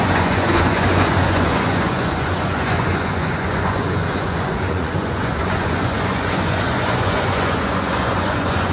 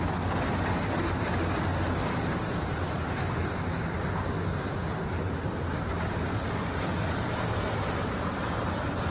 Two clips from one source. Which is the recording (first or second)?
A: second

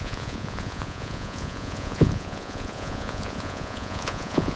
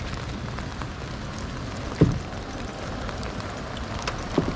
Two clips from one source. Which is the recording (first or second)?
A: second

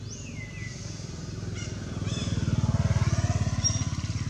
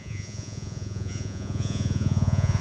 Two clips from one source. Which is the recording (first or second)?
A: first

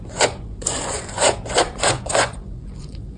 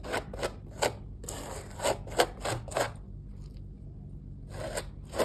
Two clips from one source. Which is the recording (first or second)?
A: second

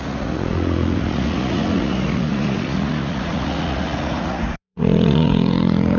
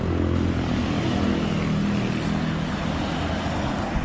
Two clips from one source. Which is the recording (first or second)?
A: second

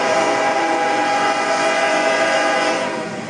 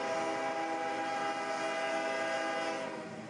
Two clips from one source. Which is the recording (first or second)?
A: second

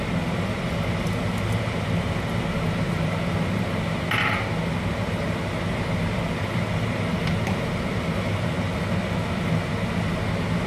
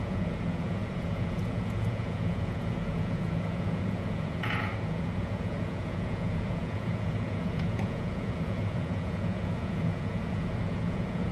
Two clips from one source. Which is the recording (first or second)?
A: first